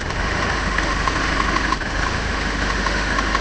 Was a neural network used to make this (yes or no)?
yes